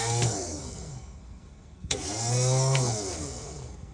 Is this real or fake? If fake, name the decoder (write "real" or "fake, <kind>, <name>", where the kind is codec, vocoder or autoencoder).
fake, codec, SNAC